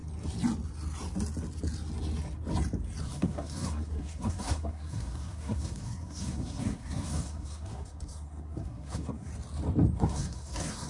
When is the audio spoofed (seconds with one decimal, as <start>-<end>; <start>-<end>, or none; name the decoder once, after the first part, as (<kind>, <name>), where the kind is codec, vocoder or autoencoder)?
3.0-9.3 (codec, SNAC); 10.0-10.9